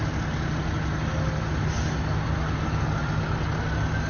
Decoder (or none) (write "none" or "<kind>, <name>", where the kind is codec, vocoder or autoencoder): none